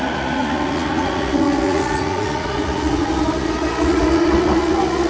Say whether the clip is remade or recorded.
remade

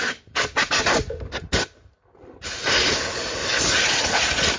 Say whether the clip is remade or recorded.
recorded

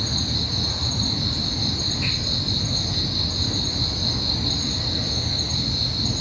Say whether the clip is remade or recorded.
recorded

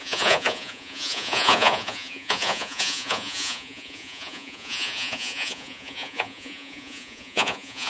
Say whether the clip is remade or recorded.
remade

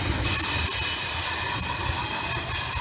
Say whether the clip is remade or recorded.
recorded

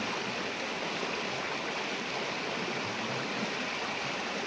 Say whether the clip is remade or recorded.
recorded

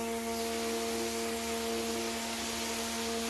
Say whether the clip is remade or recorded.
recorded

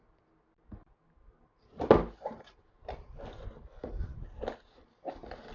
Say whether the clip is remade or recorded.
recorded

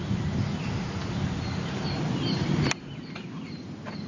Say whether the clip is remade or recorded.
recorded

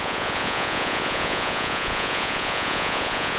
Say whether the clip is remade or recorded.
remade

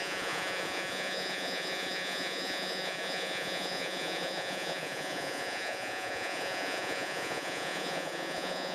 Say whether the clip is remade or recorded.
remade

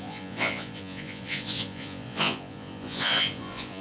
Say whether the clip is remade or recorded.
remade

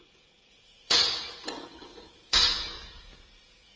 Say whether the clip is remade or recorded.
remade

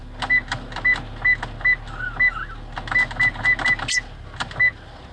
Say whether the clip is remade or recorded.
recorded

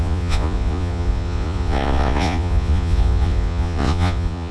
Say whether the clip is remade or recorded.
remade